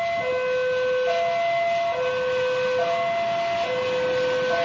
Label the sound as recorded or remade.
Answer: recorded